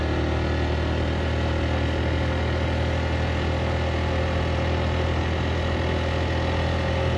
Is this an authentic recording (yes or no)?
yes